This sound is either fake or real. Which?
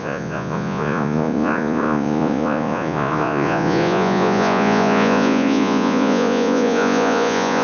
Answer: fake